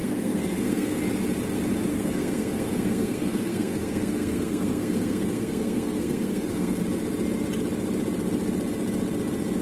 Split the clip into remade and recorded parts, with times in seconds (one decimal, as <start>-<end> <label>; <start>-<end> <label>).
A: 0.0-1.0 remade; 1.0-1.9 recorded; 1.9-6.8 remade; 6.8-9.6 recorded